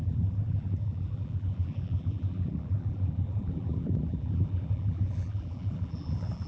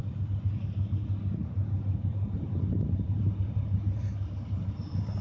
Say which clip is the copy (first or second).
first